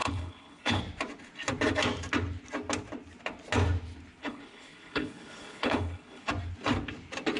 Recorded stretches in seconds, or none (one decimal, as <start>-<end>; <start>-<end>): 0.8-4.2; 6.3-7.4